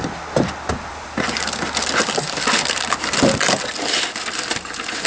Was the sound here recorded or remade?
recorded